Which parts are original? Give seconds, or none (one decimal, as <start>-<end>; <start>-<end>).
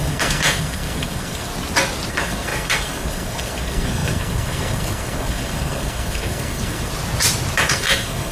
1.5-2.1; 6.9-7.7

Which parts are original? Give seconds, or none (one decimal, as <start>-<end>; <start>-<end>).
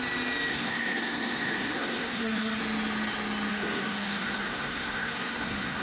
0.0-0.5; 2.6-3.5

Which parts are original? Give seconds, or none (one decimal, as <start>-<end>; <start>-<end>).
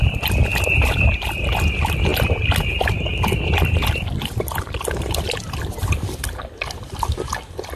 0.0-7.8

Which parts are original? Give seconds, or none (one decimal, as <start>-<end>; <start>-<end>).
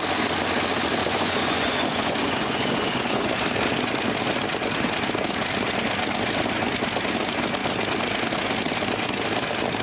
0.0-1.0; 3.3-9.8